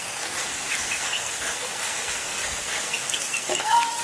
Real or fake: fake